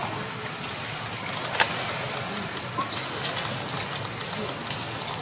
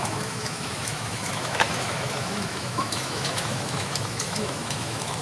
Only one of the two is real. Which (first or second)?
first